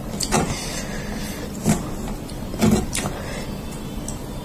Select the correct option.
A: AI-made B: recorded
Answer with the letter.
B